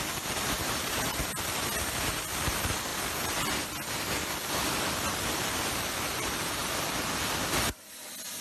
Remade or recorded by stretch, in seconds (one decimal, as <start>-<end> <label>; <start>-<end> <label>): 0.0-8.4 recorded